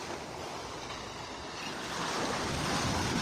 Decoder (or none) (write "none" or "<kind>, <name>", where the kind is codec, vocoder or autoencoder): none